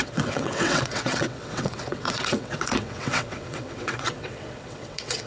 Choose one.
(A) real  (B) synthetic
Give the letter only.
B